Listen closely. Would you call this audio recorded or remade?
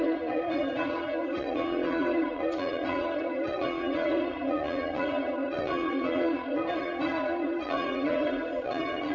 remade